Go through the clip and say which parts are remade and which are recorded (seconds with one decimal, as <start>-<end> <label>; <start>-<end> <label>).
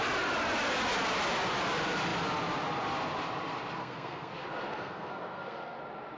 0.0-3.8 recorded; 3.8-4.3 remade; 4.3-4.7 recorded; 4.7-5.8 remade; 5.8-6.2 recorded